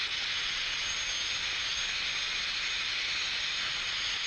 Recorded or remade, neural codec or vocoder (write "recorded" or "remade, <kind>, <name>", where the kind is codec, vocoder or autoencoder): recorded